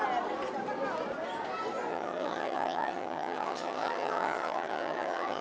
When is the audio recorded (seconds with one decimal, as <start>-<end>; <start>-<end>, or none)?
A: 0.0-1.9

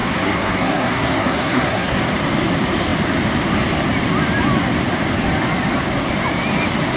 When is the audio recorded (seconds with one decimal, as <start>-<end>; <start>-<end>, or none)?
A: 2.0-7.0

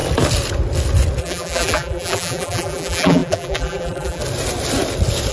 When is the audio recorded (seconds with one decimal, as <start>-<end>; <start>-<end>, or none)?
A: 0.0-1.2; 4.2-5.3

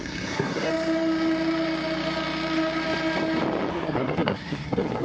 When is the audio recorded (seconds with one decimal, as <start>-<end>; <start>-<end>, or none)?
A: 0.7-3.7

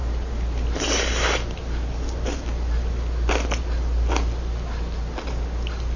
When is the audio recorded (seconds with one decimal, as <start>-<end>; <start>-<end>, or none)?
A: 0.0-6.0